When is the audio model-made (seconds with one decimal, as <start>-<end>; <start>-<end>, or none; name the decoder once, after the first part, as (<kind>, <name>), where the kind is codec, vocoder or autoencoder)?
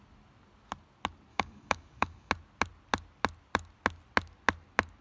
1.3-2.3 (codec, DAC)